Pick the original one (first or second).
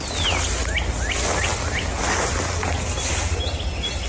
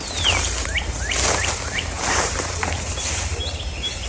first